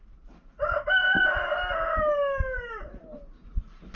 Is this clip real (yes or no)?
yes